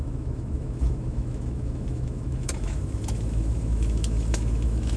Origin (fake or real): fake